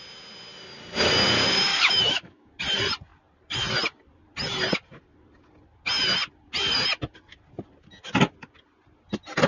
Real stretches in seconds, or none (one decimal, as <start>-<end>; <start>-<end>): 0.0-1.7; 2.5-9.5